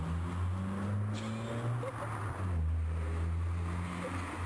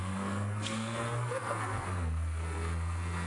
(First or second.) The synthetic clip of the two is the second